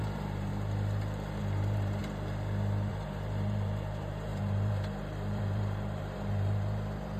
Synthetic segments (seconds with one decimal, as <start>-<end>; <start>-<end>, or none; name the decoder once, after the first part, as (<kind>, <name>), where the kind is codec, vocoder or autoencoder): 0.0-0.5 (vocoder, BigVGAN v2); 1.4-2.0; 2.9-7.2